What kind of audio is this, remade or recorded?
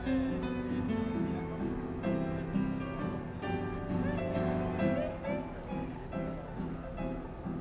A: recorded